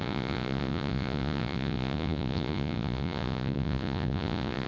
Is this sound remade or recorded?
remade